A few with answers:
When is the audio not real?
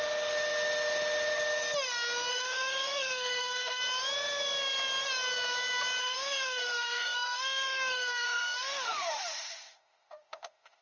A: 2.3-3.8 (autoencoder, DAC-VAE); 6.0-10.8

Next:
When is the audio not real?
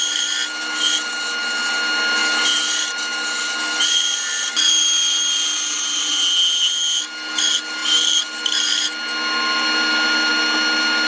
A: none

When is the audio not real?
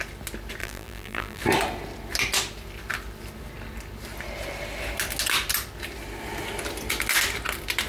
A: 0.6-1.4 (vocoder, BigVGAN v2)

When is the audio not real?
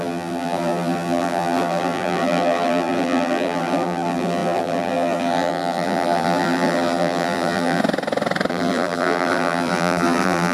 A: 0.0-7.8 (vocoder, BigVGAN v2); 8.5-10.5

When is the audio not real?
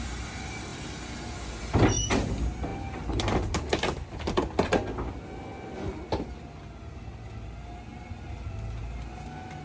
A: none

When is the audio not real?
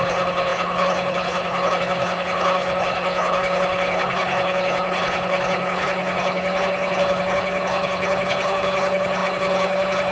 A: 0.0-10.1 (codec, HILCodec)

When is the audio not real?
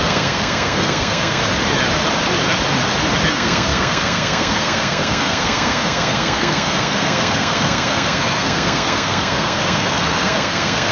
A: 0.0-1.4 (codec, SNAC); 3.3-10.9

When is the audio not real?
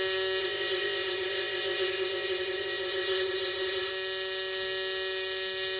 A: 0.4-3.9 (codec, ZipCodec)